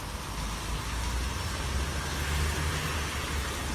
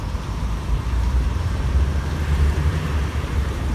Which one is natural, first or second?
first